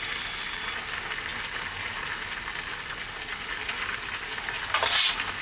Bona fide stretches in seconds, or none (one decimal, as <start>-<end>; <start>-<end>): 0.0-5.4